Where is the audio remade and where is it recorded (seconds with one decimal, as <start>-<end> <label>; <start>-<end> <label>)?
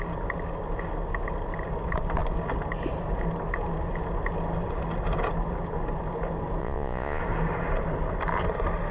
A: 0.0-6.6 recorded; 6.6-7.2 remade; 7.2-8.9 recorded